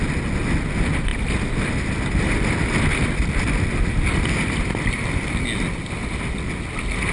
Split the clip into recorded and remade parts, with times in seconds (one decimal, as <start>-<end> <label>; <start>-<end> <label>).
0.0-7.1 recorded